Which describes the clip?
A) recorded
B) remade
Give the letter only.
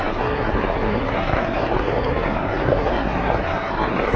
B